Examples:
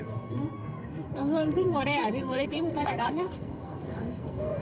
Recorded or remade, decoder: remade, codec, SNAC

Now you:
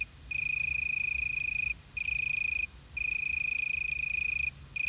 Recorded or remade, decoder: remade, vocoder, BigVGAN v2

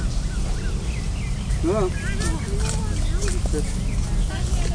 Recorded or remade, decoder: recorded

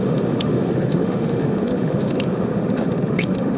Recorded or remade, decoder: remade, autoencoder, DAC-VAE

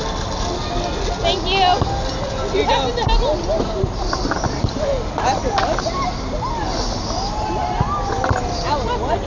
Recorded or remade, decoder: recorded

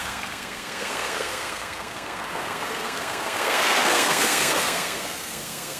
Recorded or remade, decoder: remade, codec, SNAC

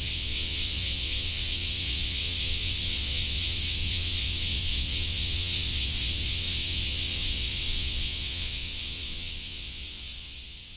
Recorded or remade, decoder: remade, vocoder, WaveNeXt